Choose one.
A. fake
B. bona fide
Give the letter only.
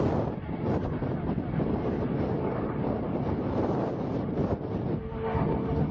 B